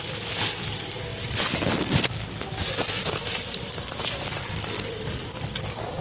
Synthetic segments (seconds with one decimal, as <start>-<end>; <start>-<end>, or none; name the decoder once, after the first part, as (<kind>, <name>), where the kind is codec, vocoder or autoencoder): none